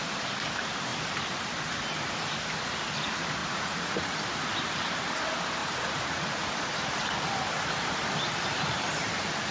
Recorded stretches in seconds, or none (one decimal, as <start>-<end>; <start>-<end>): 0.0-3.4; 4.2-5.6; 6.5-9.5